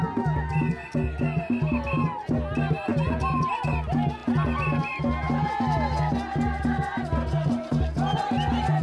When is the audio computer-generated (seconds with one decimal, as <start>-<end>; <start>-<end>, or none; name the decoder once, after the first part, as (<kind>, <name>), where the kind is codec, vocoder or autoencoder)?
2.9-3.5 (vocoder, Vocos)